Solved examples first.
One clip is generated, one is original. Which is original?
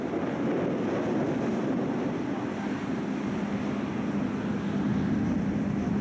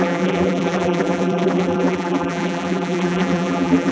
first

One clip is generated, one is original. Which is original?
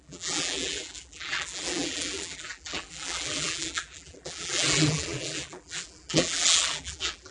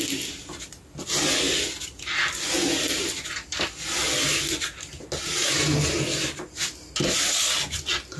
second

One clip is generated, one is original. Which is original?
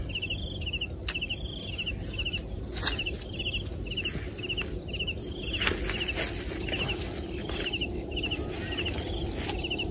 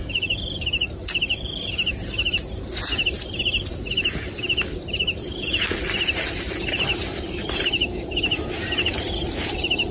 first